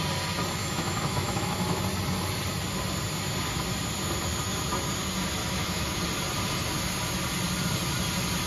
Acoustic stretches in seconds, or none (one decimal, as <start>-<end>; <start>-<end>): 0.0-0.6; 1.8-5.4; 6.0-8.5